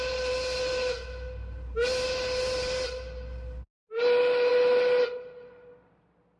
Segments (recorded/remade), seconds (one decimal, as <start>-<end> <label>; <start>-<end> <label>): 0.0-6.4 recorded